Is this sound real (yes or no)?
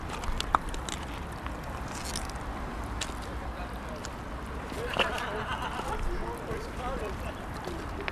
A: yes